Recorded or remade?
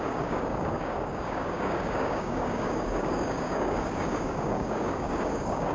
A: remade